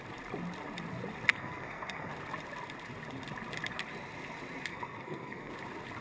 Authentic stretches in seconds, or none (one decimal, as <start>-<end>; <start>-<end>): 0.0-1.3; 2.1-4.7; 5.5-6.0